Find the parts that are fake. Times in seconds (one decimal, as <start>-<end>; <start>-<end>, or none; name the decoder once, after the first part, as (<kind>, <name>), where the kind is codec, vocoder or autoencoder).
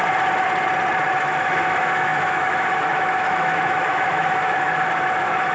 1.1-5.5 (autoencoder, DAC-VAE)